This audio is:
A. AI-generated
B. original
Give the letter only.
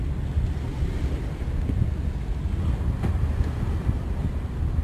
B